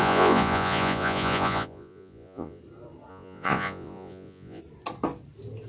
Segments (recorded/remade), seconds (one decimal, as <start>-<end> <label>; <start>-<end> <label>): 0.0-2.6 remade; 2.6-3.1 recorded; 3.1-4.6 remade; 4.6-5.7 recorded